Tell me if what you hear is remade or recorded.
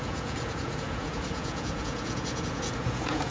remade